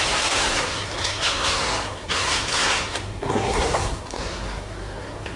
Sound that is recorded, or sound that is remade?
remade